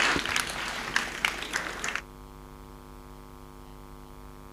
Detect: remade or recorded recorded